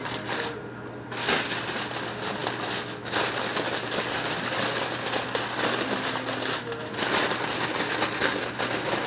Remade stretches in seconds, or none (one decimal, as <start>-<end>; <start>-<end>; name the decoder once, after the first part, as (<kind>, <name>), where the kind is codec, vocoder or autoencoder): none